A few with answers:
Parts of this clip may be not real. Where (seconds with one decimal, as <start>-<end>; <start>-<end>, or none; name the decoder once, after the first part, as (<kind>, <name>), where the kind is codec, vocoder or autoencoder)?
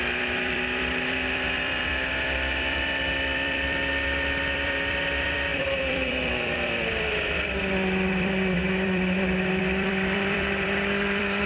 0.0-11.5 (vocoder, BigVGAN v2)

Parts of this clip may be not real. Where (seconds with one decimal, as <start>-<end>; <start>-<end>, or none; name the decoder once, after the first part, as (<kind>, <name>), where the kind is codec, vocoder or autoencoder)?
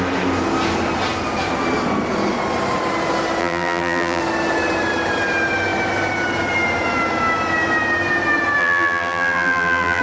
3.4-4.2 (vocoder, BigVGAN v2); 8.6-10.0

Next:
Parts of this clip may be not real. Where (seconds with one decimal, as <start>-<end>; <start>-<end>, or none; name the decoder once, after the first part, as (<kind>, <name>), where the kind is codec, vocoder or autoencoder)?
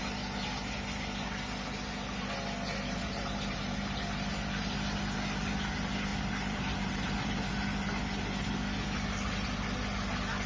3.0-4.3 (vocoder, BigVGAN v2); 6.1-7.5